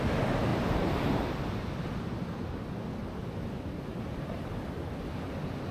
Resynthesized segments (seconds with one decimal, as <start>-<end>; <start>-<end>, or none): 0.5-1.3; 3.0-4.4